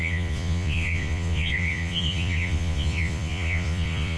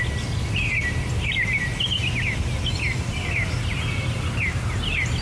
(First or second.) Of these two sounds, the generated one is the first